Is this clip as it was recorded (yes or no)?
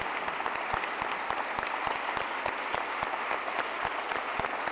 yes